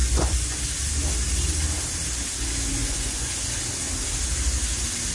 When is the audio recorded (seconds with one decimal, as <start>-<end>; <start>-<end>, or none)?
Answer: 0.6-2.8; 3.3-5.1